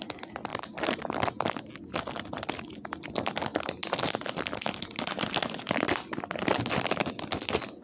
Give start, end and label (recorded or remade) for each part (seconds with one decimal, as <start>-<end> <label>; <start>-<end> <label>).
0.0-7.8 recorded